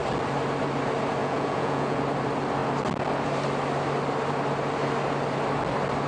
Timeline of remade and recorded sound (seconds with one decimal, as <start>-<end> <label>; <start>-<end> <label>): 0.0-1.2 recorded; 1.2-2.0 remade; 2.0-6.1 recorded